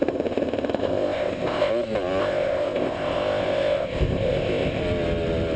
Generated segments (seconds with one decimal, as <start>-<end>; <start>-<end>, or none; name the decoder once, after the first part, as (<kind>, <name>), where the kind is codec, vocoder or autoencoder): 0.0-1.7 (codec, ZipCodec); 2.2-4.8